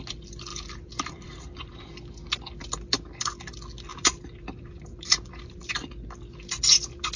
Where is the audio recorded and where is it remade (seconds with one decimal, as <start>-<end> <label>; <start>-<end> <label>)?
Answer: 0.0-0.5 recorded; 0.5-1.9 remade; 1.9-3.9 recorded; 3.9-5.7 remade; 5.7-7.2 recorded